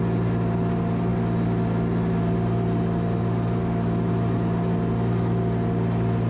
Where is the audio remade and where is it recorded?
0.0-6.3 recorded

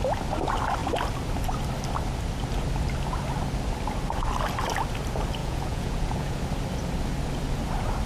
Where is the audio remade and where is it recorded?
0.0-5.4 recorded; 5.4-6.4 remade; 6.4-8.1 recorded

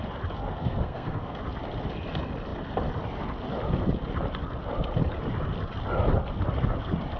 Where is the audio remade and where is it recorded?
0.0-0.5 recorded; 0.5-1.4 remade; 1.4-7.2 recorded

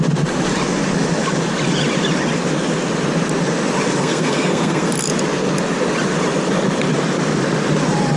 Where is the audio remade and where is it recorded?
0.0-4.0 recorded; 4.0-4.9 remade; 4.9-8.2 recorded

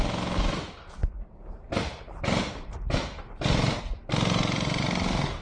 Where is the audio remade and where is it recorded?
0.0-5.4 recorded

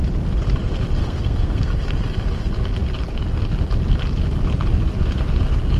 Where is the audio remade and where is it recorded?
0.0-1.0 recorded; 1.0-1.7 remade; 1.7-5.8 recorded